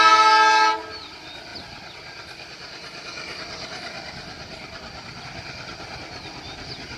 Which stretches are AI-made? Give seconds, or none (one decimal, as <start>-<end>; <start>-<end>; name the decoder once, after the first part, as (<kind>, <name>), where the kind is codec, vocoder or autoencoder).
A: none